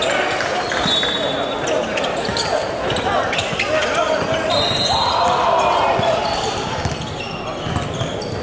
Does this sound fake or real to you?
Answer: real